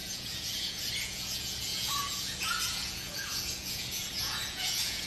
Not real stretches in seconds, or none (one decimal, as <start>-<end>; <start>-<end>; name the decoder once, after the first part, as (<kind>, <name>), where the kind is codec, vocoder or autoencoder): 0.0-5.1 (vocoder, Vocos)